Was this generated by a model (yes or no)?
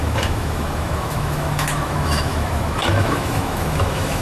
yes